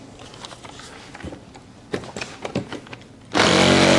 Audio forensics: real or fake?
real